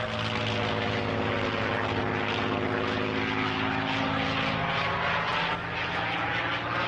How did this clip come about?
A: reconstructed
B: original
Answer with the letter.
B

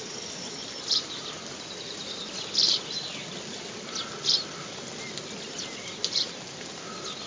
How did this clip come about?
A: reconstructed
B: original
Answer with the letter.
B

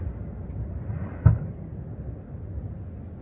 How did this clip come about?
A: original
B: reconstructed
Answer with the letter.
A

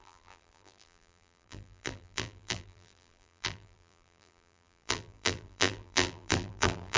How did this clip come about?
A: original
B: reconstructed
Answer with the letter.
B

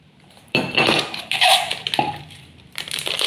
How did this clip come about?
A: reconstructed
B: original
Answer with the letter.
A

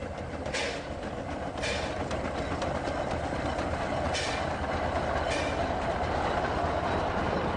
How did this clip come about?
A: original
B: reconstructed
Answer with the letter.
A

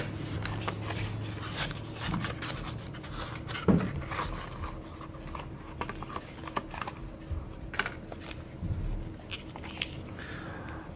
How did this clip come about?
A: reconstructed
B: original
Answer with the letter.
B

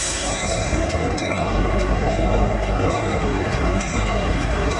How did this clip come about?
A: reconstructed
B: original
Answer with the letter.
A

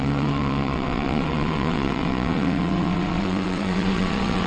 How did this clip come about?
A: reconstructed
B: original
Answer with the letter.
A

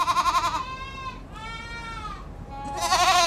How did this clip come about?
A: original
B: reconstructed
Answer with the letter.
A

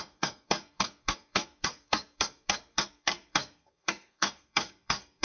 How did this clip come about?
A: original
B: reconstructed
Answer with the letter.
B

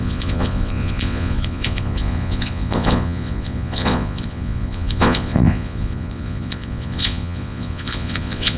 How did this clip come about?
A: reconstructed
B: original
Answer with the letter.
A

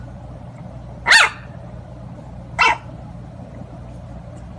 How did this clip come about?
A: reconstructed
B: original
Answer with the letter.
B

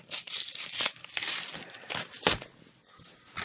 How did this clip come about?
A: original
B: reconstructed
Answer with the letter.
A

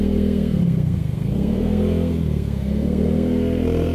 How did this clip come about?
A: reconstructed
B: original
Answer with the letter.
A